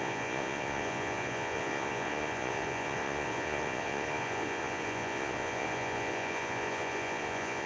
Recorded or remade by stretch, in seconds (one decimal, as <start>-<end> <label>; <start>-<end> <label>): 0.0-7.7 remade